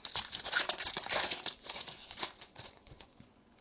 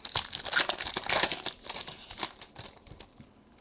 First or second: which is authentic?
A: second